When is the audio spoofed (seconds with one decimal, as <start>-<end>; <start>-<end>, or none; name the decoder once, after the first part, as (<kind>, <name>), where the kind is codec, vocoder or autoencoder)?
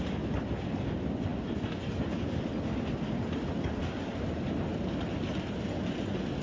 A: none